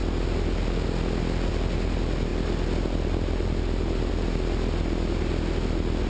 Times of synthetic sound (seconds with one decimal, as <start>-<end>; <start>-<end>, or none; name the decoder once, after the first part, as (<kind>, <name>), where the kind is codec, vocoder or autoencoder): none